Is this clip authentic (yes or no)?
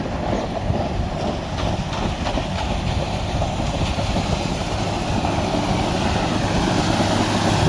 yes